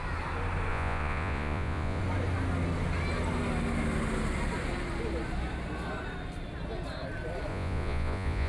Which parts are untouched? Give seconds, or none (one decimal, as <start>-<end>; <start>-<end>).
0.0-0.7; 2.0-7.5